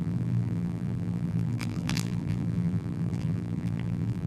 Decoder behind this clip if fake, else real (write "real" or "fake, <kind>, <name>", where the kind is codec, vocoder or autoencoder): fake, vocoder, BigVGAN v2